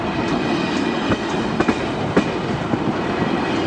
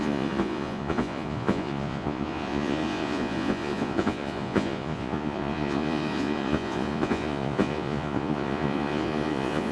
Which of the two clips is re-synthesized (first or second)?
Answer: second